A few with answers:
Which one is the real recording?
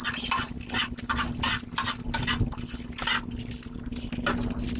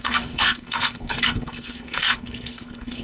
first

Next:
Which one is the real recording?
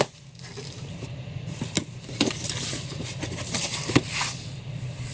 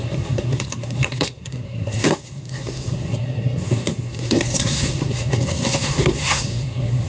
first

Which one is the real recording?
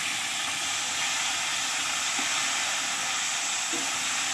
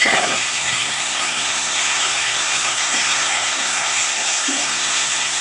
first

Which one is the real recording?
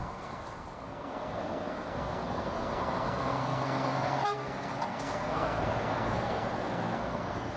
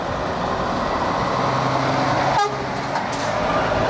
second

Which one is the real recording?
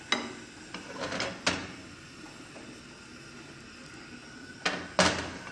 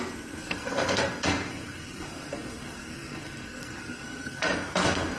first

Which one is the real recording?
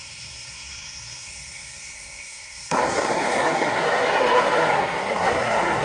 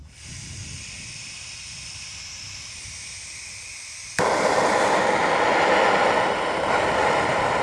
second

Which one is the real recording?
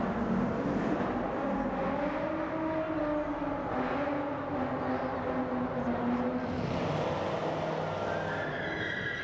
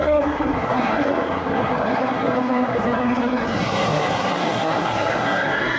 first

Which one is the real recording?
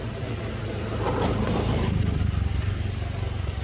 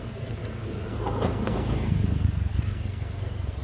first